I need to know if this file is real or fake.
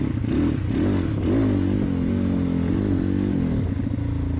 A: real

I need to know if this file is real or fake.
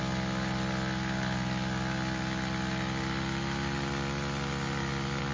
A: real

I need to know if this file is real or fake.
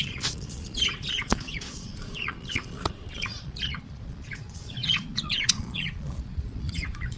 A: fake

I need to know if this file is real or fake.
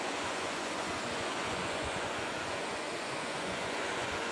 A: fake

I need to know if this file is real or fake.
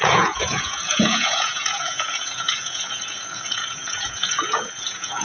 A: fake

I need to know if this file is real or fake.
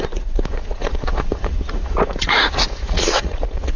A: fake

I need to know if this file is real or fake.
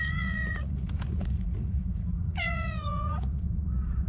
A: fake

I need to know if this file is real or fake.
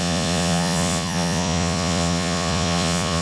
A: fake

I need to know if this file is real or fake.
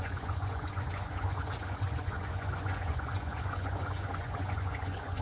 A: fake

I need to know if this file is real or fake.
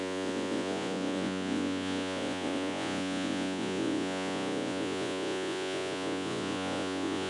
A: fake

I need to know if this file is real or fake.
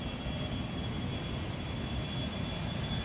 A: real